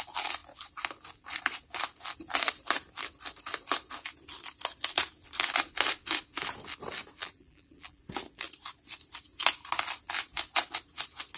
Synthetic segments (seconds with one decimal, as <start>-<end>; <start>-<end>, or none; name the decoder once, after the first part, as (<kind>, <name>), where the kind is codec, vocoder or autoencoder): 7.2-8.0 (vocoder, BigVGAN v2)